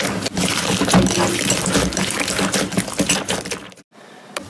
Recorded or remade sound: recorded